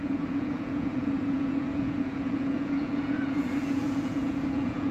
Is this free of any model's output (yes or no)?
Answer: no